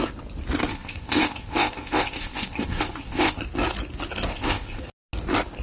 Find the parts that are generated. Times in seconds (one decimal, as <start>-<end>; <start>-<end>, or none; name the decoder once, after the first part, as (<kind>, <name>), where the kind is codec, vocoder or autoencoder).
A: 0.7-3.4 (codec, ZipCodec); 4.3-4.8